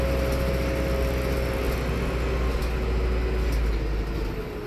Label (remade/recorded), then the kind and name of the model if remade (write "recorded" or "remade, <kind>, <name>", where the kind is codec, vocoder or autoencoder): recorded